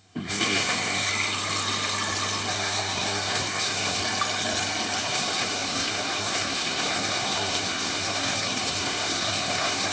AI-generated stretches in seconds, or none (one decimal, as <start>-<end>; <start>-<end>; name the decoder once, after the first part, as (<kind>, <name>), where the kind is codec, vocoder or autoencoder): 0.0-1.1 (codec, SNAC); 2.5-4.0; 5.0-9.9